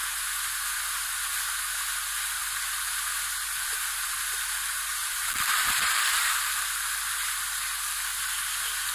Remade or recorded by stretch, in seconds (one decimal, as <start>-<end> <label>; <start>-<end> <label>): 0.0-5.0 recorded; 5.0-6.3 remade; 6.3-8.9 recorded

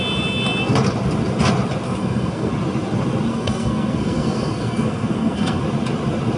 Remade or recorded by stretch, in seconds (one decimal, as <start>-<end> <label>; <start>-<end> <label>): 0.0-2.0 recorded; 2.0-2.5 remade; 2.5-3.3 recorded; 3.3-5.6 remade; 5.6-6.4 recorded

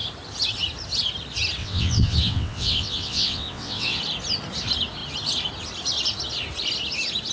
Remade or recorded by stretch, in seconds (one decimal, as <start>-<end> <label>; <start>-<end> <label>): 0.0-1.6 recorded; 1.6-4.0 remade; 4.0-7.3 recorded

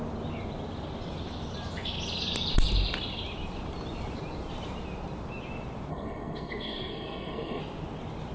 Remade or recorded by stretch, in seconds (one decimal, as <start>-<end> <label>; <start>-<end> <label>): 0.0-5.9 recorded; 5.9-7.6 remade; 7.6-8.3 recorded

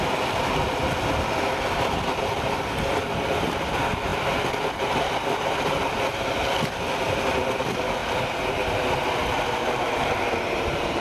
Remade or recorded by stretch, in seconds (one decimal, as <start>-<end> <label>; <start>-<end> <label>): 0.0-11.0 recorded

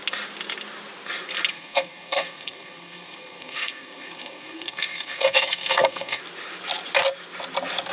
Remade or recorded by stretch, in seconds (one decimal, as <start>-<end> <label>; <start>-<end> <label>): 0.0-1.5 recorded; 1.5-6.2 remade; 6.2-7.9 recorded